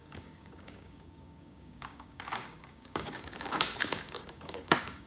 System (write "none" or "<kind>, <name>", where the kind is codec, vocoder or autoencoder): codec, DAC